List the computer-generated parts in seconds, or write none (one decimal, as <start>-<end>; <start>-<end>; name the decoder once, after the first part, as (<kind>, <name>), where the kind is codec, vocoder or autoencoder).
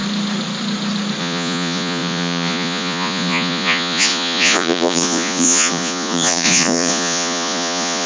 1.2-8.1 (vocoder, Vocos)